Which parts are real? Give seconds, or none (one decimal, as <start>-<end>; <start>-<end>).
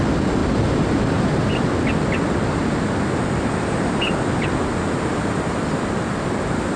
0.0-0.4; 1.2-6.8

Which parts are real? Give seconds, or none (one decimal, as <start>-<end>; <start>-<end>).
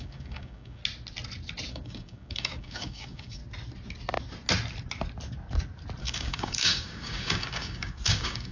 0.8-1.7; 3.4-6.0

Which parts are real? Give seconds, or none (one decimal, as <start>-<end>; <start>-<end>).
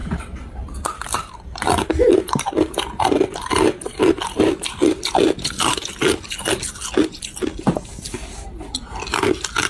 2.1-4.0; 5.9-9.7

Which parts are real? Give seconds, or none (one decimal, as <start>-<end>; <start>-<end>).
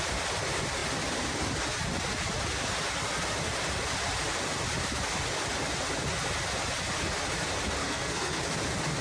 0.0-7.8; 8.4-9.0